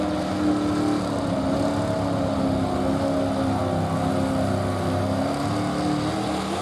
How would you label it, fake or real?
real